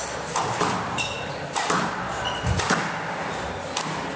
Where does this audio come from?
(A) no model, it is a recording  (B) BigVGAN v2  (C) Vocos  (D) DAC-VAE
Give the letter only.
A